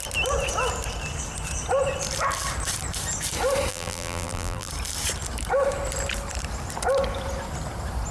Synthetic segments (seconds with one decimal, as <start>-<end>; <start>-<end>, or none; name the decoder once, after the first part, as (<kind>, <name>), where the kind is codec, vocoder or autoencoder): 3.7-4.7 (vocoder, BigVGAN v2)